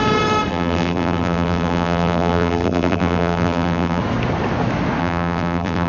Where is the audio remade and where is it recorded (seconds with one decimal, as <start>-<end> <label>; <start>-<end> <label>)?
0.0-0.5 recorded; 0.5-4.0 remade; 4.0-5.0 recorded; 5.0-5.9 remade